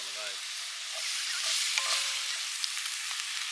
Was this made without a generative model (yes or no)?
yes